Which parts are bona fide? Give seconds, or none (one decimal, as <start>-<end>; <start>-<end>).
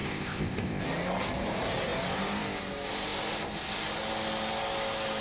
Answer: 0.8-5.2